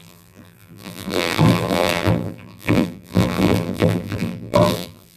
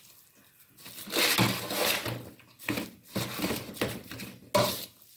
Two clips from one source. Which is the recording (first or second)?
second